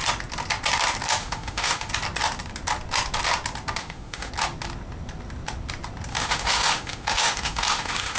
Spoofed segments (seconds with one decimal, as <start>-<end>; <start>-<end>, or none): 1.2-1.9; 3.8-4.3; 6.1-8.2